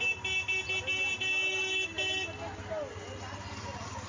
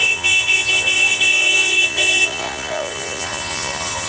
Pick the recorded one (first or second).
first